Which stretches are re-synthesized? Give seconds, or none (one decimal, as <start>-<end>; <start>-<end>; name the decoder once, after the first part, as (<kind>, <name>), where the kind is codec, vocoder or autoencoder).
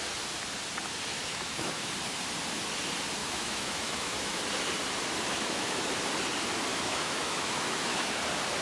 1.1-1.9 (autoencoder, DAC-VAE); 3.2-4.4; 5.3-5.9; 6.7-8.1